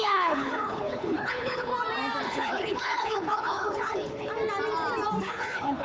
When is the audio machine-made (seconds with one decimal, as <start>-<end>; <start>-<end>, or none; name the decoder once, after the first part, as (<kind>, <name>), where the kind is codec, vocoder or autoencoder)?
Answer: 0.0-1.7 (codec, HILCodec); 2.2-4.3; 5.2-5.8